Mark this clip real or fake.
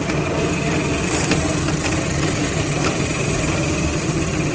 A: real